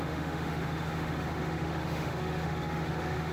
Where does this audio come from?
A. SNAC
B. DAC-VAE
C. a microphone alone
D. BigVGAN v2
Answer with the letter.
B